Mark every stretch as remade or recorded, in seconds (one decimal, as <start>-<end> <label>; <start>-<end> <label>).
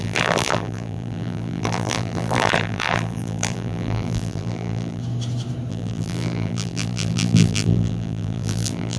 0.0-5.0 remade; 5.0-5.7 recorded; 5.7-9.0 remade